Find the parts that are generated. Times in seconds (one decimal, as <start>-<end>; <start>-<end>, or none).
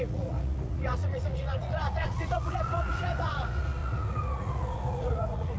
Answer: 0.0-5.6